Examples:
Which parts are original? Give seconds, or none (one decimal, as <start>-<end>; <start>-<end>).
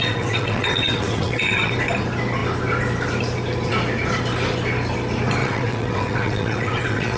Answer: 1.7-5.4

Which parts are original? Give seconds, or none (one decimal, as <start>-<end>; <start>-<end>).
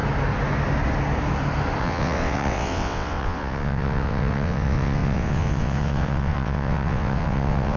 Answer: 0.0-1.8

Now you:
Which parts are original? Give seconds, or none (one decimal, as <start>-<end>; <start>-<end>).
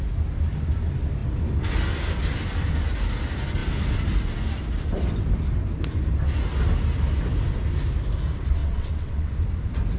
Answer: 0.0-8.6; 9.3-10.0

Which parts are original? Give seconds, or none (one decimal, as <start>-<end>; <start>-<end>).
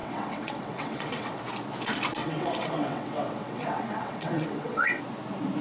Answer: 1.4-2.2; 5.0-5.6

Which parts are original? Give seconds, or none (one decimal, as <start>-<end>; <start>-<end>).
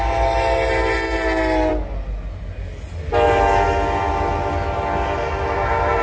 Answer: 0.0-6.0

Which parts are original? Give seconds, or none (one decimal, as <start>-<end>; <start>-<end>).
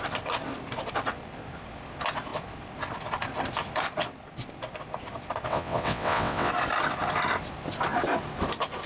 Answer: 0.0-5.5; 6.5-8.9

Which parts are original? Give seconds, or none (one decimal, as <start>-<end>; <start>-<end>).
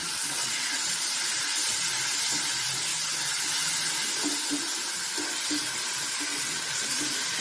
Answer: 0.9-6.3; 7.0-7.4